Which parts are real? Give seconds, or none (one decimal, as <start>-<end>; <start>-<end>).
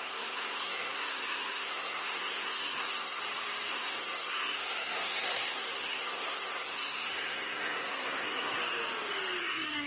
3.2-3.7; 8.6-9.4